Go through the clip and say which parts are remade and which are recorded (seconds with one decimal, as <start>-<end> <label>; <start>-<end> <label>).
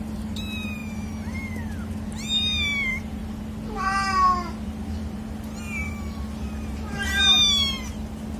0.0-8.4 recorded